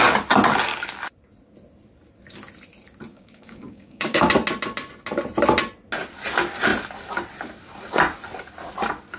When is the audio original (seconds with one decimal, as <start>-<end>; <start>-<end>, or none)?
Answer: 0.0-3.1; 4.3-9.2